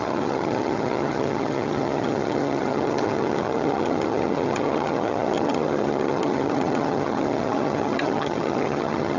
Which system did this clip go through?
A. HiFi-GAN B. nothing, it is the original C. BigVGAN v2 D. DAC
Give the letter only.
A